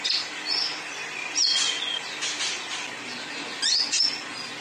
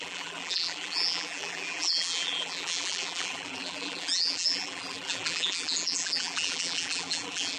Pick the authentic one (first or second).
first